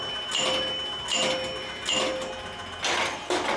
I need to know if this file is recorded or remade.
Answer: recorded